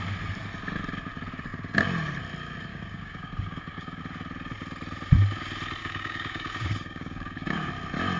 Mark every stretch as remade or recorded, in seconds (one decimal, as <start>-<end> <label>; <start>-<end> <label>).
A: 0.0-2.7 recorded; 2.7-4.0 remade; 4.0-5.8 recorded; 5.8-7.7 remade; 7.7-8.2 recorded